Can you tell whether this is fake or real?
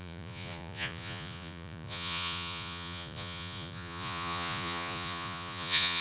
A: fake